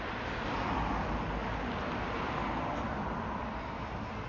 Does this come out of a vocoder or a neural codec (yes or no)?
no